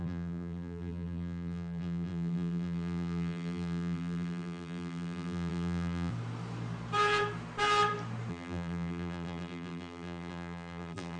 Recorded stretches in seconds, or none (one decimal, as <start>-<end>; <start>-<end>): 6.1-8.3